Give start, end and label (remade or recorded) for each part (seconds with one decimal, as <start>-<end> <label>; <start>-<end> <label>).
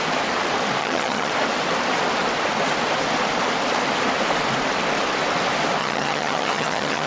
0.0-0.8 recorded; 0.8-1.3 remade; 1.3-5.8 recorded; 5.8-7.1 remade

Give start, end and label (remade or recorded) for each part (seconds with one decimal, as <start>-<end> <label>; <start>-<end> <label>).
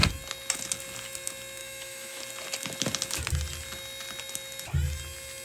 0.0-1.6 recorded; 1.6-2.2 remade; 2.2-5.4 recorded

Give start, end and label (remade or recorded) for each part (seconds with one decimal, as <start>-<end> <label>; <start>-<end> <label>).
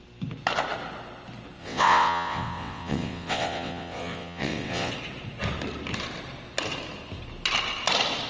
0.0-1.6 recorded; 1.6-4.9 remade; 4.9-8.3 recorded